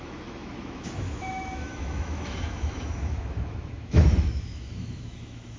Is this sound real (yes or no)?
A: no